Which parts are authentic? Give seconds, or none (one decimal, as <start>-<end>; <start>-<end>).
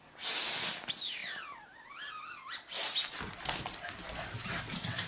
0.0-5.1